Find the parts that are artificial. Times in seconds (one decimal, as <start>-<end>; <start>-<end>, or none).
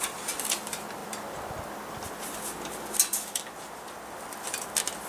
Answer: none